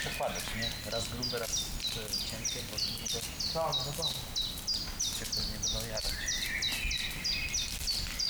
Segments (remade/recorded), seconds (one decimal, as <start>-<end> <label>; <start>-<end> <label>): 0.0-8.3 recorded